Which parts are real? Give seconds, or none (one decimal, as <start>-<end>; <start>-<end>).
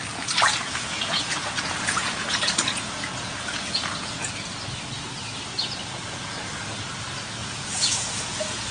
0.0-0.6; 4.3-5.8; 6.4-7.4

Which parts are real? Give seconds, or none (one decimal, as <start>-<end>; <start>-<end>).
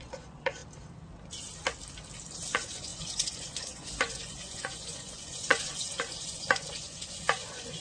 0.6-2.5